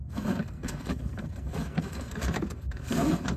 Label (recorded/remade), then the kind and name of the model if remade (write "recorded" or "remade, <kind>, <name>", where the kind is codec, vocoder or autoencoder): remade, codec, SNAC